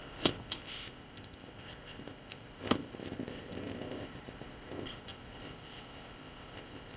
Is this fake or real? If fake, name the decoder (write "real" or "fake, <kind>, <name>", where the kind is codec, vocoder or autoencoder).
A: fake, codec, ZipCodec